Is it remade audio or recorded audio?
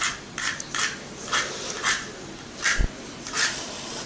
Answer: recorded